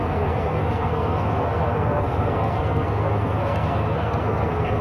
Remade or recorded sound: remade